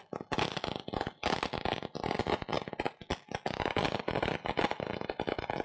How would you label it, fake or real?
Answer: real